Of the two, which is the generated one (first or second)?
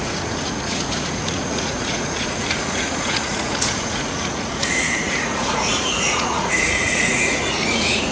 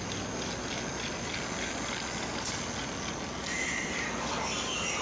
first